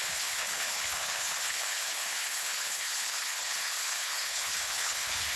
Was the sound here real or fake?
fake